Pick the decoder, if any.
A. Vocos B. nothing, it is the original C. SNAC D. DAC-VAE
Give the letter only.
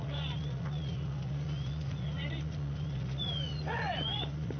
A